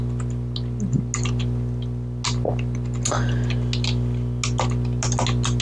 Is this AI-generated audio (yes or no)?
no